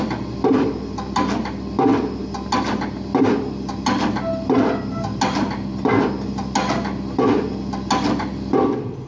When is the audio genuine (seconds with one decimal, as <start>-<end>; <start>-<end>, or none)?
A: 0.0-9.1